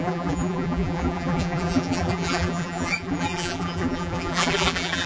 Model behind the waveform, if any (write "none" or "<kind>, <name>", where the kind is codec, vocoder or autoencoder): vocoder, BigVGAN v2